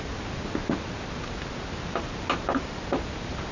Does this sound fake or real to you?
real